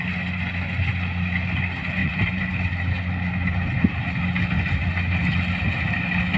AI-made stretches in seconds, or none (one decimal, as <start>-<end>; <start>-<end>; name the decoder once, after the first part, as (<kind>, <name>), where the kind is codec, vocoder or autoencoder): 2.0-2.5 (vocoder, Vocos)